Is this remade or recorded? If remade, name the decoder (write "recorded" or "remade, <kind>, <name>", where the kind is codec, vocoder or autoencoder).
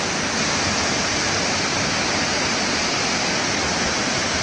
recorded